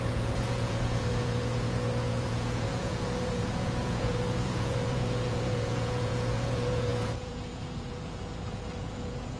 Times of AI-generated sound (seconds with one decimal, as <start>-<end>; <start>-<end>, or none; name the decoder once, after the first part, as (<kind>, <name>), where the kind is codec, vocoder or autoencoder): 0.0-9.4 (vocoder, Vocos)